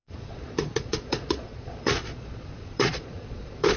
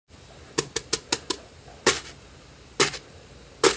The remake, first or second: first